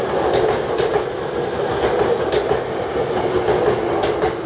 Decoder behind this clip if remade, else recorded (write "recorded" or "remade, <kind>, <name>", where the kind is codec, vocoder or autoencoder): recorded